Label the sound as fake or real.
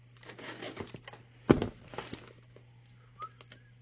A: real